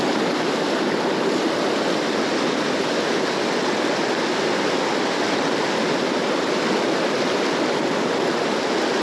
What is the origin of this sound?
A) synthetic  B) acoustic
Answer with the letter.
B